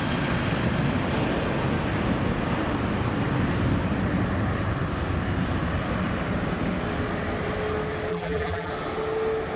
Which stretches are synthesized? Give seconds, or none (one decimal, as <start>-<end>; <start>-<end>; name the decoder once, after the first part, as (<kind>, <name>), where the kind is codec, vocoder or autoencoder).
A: 8.1-8.7 (vocoder, BigVGAN v2)

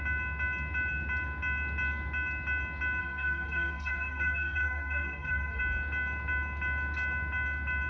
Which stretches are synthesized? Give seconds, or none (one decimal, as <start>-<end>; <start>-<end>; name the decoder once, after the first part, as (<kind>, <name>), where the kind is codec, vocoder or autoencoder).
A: 3.0-5.6 (codec, SNAC)

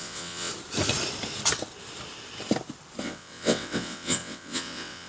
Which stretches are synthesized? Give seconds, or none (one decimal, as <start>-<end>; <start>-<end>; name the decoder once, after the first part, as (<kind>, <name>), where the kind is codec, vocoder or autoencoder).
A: 0.0-0.5 (vocoder, WaveNeXt); 3.0-5.1

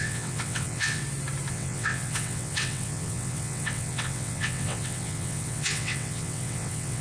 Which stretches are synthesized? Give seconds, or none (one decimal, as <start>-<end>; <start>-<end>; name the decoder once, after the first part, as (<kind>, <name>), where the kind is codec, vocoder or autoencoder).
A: 0.0-1.0 (vocoder, WaveNeXt); 1.5-7.0

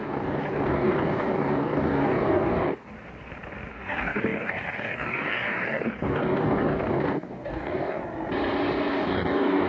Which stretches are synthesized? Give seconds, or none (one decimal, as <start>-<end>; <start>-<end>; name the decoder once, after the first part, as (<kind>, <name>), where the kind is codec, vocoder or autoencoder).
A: 0.0-2.9 (codec, DAC); 3.7-8.0; 8.9-9.7

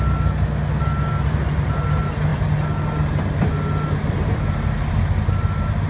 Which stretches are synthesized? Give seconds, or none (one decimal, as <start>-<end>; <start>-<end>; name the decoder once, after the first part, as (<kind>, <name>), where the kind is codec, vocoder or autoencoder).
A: none

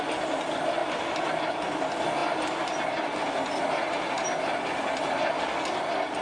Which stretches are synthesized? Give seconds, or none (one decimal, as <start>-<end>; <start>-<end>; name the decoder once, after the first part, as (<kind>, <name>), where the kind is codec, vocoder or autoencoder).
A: none